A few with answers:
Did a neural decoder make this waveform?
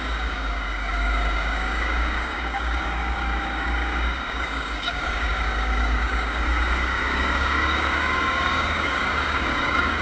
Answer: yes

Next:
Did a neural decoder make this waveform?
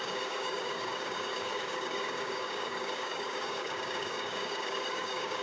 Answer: yes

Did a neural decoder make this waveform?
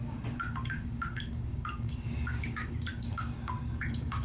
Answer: yes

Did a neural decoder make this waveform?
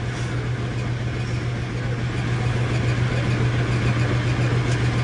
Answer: no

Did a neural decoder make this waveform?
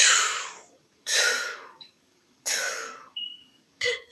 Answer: yes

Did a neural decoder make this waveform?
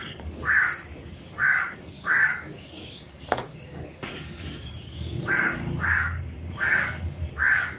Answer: yes